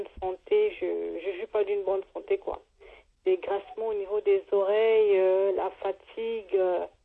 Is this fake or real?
real